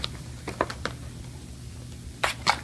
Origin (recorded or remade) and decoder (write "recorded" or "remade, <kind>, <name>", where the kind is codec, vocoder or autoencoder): remade, vocoder, BigVGAN v2